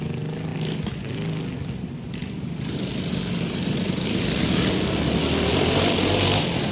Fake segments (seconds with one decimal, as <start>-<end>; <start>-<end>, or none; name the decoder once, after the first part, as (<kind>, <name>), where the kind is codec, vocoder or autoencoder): none